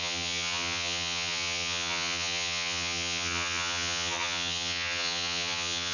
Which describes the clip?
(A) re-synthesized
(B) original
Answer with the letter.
A